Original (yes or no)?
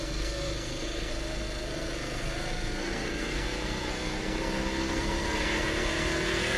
no